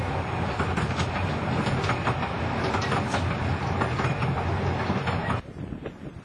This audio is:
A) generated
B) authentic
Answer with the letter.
B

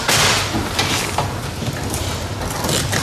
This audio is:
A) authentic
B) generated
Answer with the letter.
A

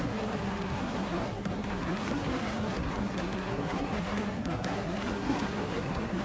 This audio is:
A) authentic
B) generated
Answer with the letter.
B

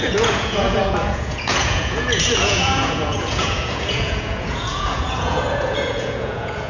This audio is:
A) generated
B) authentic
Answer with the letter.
A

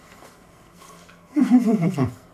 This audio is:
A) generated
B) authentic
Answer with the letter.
A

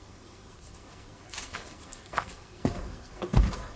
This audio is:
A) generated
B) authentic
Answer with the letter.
A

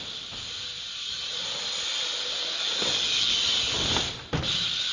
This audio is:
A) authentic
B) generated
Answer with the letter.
A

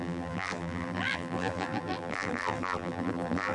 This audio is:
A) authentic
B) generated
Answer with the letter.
B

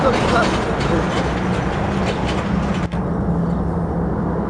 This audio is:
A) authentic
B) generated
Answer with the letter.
A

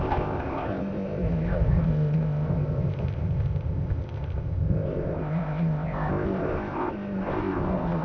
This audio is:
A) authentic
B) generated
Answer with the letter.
B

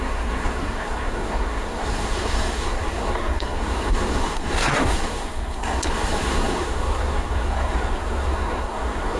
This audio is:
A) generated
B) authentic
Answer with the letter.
A